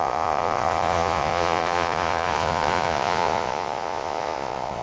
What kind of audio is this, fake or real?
fake